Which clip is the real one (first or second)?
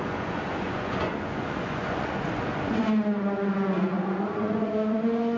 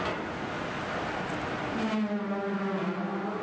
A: second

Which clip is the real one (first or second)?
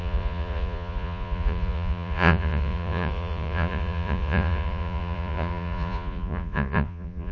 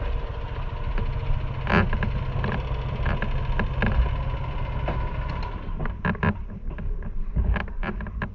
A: second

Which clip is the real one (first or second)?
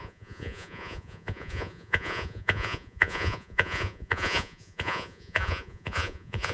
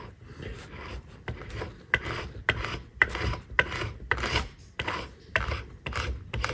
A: second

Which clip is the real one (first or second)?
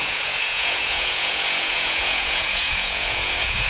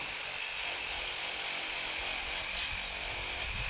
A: second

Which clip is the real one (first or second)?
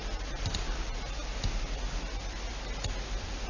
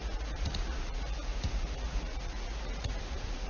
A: first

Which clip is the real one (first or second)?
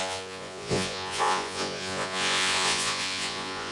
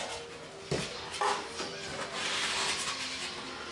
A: second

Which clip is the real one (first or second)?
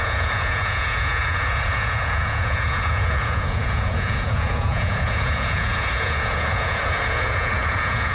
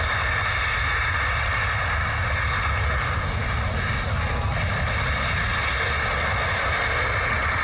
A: second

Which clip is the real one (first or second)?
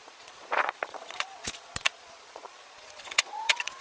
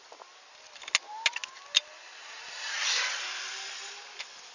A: second